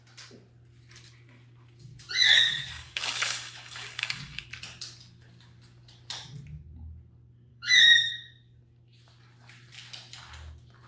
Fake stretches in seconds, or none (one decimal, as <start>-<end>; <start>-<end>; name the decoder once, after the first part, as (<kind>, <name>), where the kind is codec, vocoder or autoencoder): 2.2-4.4 (codec, DAC); 7.5-8.1